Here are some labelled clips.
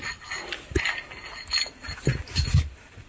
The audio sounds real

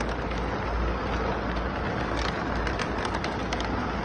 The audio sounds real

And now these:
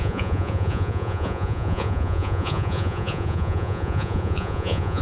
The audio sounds fake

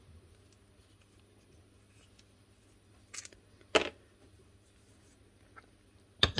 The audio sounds real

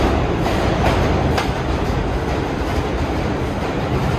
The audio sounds fake